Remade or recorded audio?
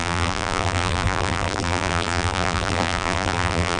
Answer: remade